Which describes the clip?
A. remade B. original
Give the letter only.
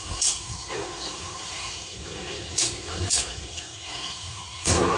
A